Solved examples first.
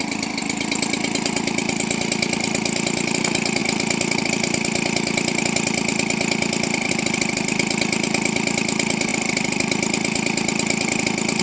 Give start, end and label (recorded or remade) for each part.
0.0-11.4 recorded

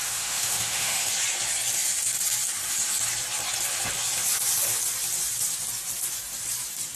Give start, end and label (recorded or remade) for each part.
0.0-1.1 remade; 1.1-7.0 recorded

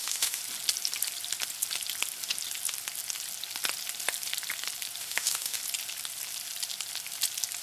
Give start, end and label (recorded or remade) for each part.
0.0-0.4 remade; 0.4-5.0 recorded; 5.0-5.6 remade; 5.6-7.6 recorded

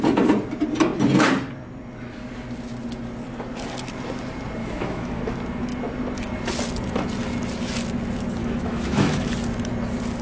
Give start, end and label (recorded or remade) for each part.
0.0-4.6 recorded; 4.6-5.2 remade; 5.2-8.4 recorded; 8.4-9.3 remade; 9.3-10.2 recorded

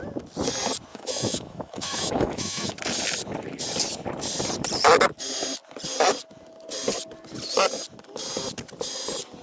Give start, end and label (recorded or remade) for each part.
0.0-0.9 recorded; 0.9-2.7 remade; 2.7-9.4 recorded

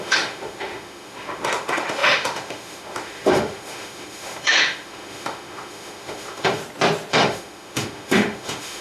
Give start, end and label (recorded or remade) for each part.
0.0-6.6 remade; 6.6-7.1 recorded; 7.1-8.8 remade

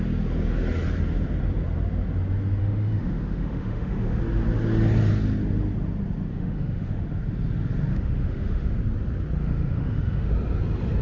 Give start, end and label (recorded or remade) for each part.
0.0-2.6 recorded; 2.6-4.2 remade; 4.2-6.3 recorded; 6.3-7.0 remade; 7.0-7.9 recorded; 7.9-8.8 remade; 8.8-9.4 recorded; 9.4-10.3 remade; 10.3-11.0 recorded

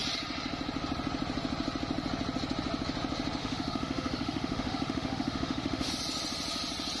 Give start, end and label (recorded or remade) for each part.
0.0-3.4 recorded; 3.4-5.9 remade; 5.9-7.0 recorded